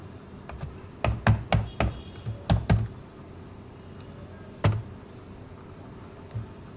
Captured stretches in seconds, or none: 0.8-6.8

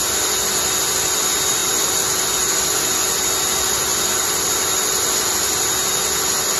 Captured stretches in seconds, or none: 0.0-1.6; 2.8-3.9; 4.5-6.6

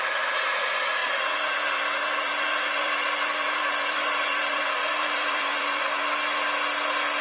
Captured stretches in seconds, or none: 1.0-1.7; 6.0-7.2

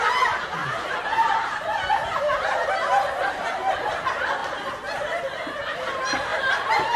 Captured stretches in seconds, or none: 0.0-0.6; 3.3-6.3

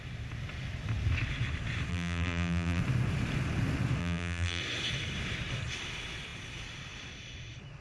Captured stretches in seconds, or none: 0.0-1.9; 2.8-4.0; 4.6-7.8